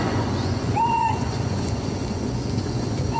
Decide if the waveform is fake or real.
fake